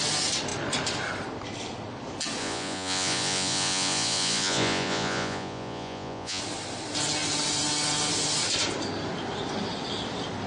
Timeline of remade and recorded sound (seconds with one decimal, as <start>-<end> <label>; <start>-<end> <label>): 0.0-2.4 recorded; 2.4-6.4 remade; 6.4-10.5 recorded

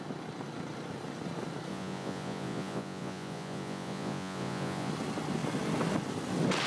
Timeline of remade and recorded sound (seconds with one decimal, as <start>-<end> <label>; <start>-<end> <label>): 0.0-1.7 recorded; 1.7-4.9 remade; 4.9-6.7 recorded

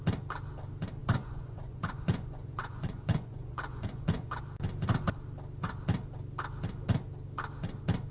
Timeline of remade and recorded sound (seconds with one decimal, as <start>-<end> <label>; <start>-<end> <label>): 0.0-1.0 recorded; 1.0-4.4 remade; 4.4-8.1 recorded

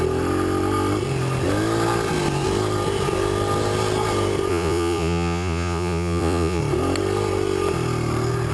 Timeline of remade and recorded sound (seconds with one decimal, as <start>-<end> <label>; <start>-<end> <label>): 0.0-4.5 recorded; 4.5-6.6 remade; 6.6-8.5 recorded

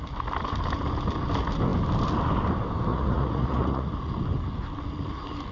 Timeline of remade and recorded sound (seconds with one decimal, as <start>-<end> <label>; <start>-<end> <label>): 0.0-2.9 recorded; 2.9-3.9 remade; 3.9-5.5 recorded

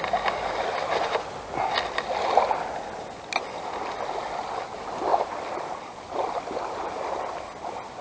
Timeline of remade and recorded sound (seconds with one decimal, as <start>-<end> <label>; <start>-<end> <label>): 0.0-8.0 recorded

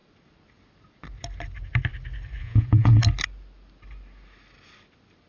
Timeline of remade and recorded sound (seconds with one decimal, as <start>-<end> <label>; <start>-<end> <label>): 0.0-2.4 recorded; 2.4-3.0 remade; 3.0-5.3 recorded

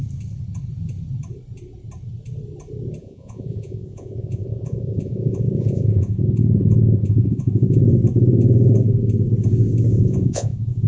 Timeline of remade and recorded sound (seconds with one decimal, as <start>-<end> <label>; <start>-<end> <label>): 0.0-3.0 recorded; 3.0-7.8 remade; 7.8-9.9 recorded; 9.9-10.9 remade